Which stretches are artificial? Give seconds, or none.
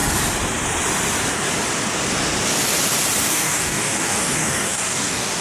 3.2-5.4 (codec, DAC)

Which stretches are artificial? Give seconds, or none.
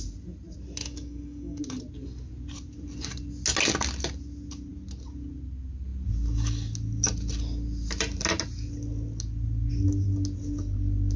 0.8-1.6 (codec, DAC)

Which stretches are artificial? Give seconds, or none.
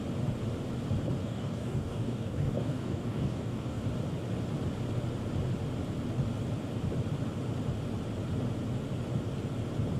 1.2-3.8 (codec, DAC)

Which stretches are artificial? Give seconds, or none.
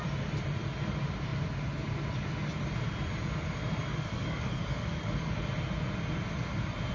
3.9-5.4 (codec, DAC)